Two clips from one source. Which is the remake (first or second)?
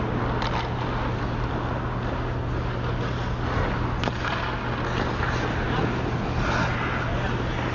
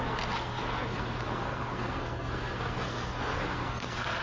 second